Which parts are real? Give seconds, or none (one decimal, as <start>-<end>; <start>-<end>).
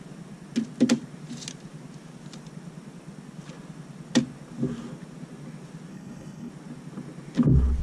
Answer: 0.0-5.9; 6.5-7.8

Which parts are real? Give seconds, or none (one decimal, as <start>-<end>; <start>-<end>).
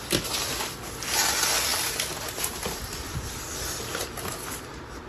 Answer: 0.0-5.1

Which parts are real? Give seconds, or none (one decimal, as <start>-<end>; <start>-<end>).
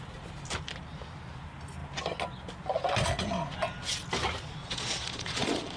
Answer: 0.0-4.6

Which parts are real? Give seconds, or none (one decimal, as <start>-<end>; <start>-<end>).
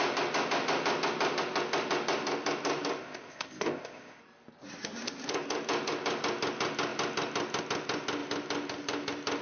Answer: 0.0-3.0; 4.2-9.4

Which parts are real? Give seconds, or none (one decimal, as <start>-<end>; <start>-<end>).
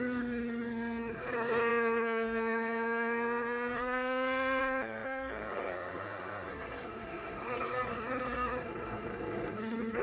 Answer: none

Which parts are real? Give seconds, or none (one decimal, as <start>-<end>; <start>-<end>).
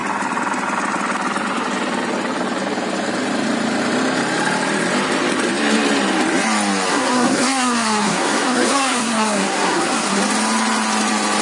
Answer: 0.0-6.9; 10.2-11.4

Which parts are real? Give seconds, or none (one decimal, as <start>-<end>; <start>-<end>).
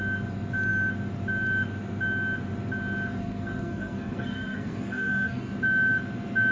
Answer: 0.0-3.2; 5.5-6.5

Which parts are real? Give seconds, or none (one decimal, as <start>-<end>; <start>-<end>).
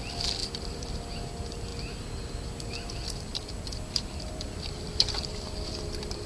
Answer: 0.0-0.4; 1.2-3.3